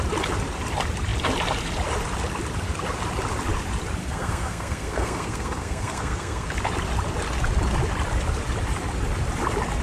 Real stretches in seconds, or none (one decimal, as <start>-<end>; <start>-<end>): 0.0-4.0; 6.5-9.8